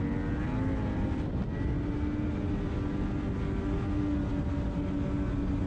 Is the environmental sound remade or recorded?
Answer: recorded